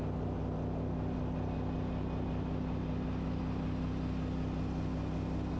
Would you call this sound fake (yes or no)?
no